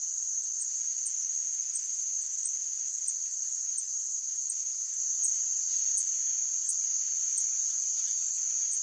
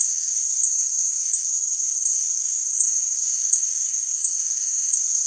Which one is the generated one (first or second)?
second